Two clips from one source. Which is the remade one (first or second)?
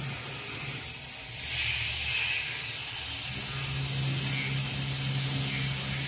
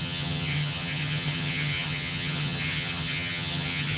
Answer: second